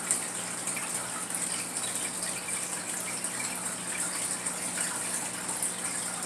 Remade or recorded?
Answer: recorded